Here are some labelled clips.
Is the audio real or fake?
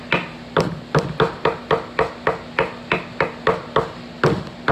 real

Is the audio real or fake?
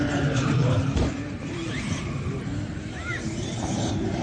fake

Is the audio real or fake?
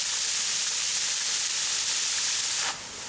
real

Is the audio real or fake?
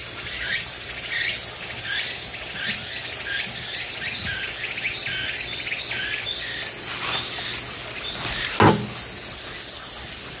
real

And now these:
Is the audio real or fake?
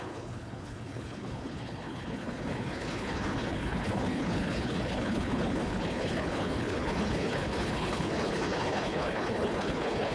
fake